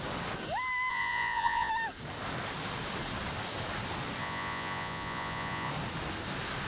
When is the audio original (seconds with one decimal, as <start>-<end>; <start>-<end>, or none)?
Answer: 0.0-0.9; 1.7-4.2; 5.7-6.7